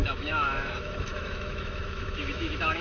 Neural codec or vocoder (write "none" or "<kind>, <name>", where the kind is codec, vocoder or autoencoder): autoencoder, DAC-VAE